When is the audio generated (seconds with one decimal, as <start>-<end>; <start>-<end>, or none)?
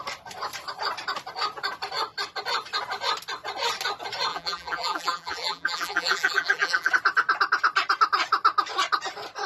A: 4.3-6.9